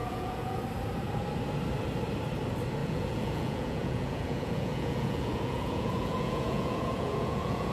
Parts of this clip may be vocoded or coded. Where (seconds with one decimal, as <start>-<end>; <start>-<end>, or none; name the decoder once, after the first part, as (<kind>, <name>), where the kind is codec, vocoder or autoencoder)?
0.0-0.6 (vocoder, Vocos); 2.8-7.7